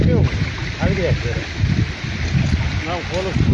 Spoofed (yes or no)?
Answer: no